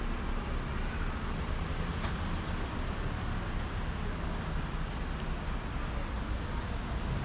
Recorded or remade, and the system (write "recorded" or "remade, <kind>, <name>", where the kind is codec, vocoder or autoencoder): recorded